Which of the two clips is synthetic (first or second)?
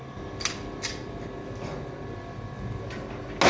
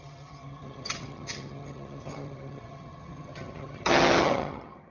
second